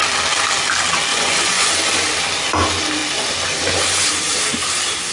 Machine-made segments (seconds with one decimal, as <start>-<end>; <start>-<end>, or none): 1.1-1.7